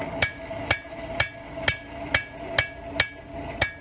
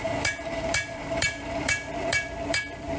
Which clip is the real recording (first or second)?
first